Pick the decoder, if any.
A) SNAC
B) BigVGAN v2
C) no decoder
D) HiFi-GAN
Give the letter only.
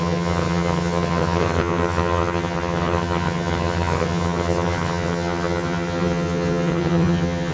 D